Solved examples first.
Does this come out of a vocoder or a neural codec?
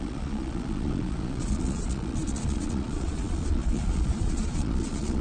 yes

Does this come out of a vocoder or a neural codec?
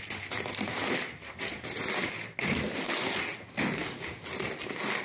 no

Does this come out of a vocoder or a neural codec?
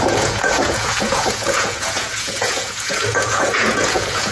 yes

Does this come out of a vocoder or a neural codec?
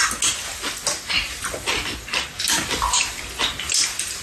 no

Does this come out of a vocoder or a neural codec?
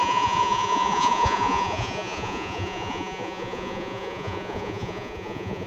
yes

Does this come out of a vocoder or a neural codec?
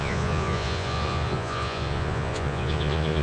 yes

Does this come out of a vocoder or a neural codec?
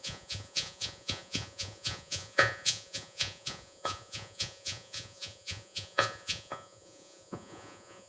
yes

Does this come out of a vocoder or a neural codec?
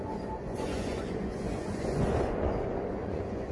yes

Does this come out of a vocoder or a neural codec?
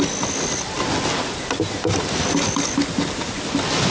no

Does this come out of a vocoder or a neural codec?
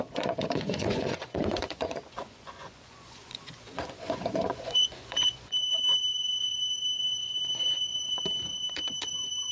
yes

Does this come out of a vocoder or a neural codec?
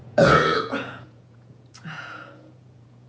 yes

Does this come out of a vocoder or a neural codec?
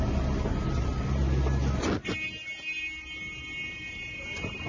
no